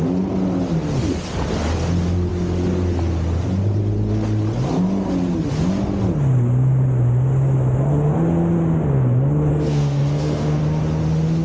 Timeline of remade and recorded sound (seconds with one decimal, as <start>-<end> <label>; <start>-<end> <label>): 0.0-9.5 recorded; 9.5-10.6 remade; 10.6-11.4 recorded